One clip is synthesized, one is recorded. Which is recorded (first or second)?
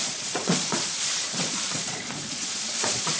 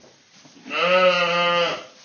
second